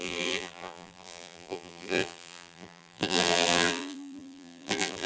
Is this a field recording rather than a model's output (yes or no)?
no